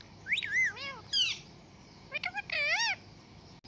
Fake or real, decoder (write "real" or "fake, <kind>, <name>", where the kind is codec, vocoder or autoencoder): real